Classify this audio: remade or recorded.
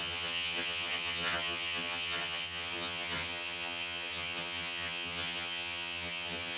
remade